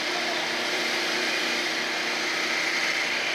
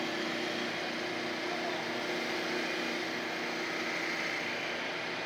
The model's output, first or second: first